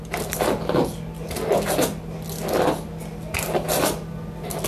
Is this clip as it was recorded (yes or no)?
yes